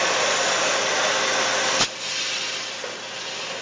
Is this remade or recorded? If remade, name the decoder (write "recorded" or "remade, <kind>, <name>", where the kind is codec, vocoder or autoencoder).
remade, vocoder, BigVGAN v2